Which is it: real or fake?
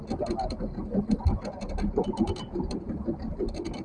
real